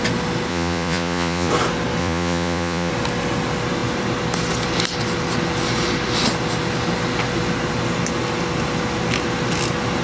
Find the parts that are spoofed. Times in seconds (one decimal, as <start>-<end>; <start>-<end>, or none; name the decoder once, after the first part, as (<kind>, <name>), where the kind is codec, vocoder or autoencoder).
0.5-1.5 (vocoder, Vocos); 2.0-2.9